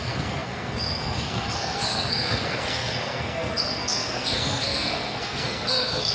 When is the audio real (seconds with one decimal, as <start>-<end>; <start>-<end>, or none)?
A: none